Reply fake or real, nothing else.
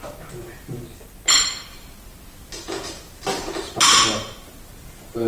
real